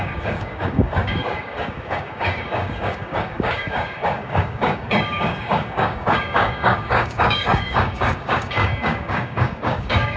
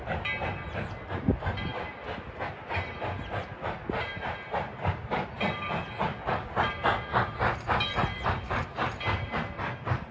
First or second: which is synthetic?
first